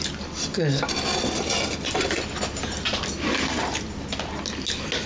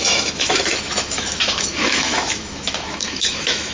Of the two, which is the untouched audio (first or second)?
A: first